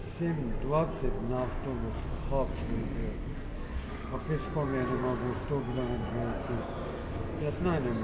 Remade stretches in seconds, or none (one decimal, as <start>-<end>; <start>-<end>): 3.0-4.2; 7.0-7.5